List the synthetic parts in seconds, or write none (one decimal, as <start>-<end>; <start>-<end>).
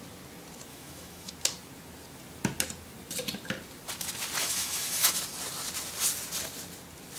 0.7-1.3; 4.4-5.2